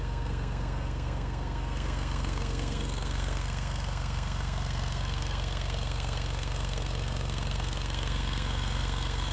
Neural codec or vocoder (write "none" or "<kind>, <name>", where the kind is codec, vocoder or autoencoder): codec, SNAC